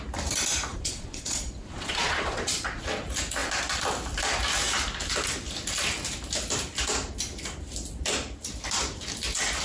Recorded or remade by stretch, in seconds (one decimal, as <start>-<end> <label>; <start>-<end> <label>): 0.0-0.7 recorded; 0.7-2.8 remade; 2.8-9.6 recorded